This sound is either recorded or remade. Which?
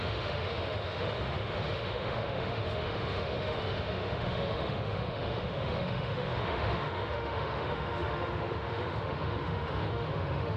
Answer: remade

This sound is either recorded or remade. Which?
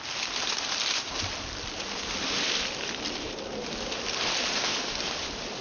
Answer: recorded